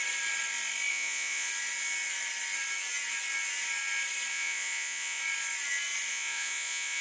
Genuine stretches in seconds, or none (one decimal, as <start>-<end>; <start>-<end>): 0.0-0.9; 1.5-4.3; 5.2-6.1